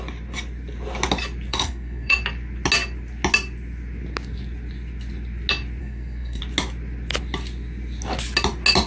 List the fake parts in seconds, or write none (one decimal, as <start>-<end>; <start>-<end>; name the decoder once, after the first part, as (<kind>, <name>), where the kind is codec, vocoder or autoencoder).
1.5-2.2 (codec, SNAC); 5.8-6.4